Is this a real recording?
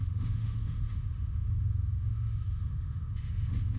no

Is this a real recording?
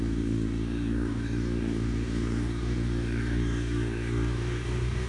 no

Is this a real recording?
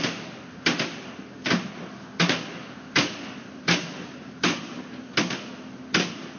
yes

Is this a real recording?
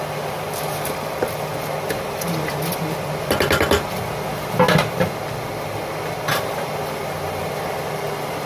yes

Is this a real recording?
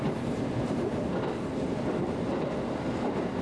yes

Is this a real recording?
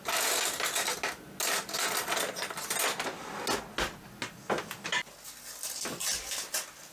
yes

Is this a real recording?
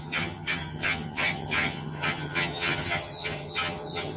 no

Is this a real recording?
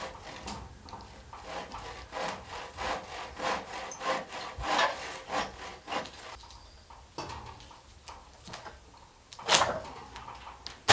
yes